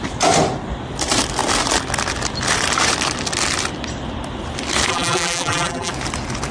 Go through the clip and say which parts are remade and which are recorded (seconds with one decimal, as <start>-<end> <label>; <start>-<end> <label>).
0.0-4.9 recorded; 4.9-5.9 remade; 5.9-6.5 recorded